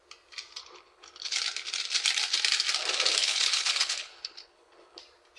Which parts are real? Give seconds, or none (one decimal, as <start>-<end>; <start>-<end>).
0.0-0.6; 1.4-3.2; 5.0-5.4